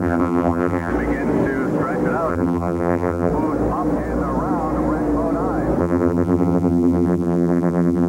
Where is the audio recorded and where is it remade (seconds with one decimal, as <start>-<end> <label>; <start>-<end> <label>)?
0.0-0.9 remade; 0.9-2.3 recorded; 2.3-3.3 remade; 3.3-5.8 recorded; 5.8-8.1 remade